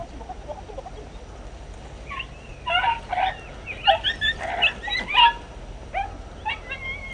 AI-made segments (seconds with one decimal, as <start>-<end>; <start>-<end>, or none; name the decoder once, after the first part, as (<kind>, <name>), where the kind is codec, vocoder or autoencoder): none